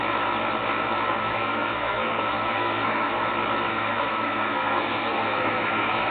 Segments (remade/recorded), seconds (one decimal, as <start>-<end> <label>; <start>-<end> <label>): 0.0-1.2 recorded; 1.2-3.1 remade; 3.1-3.7 recorded; 3.7-6.1 remade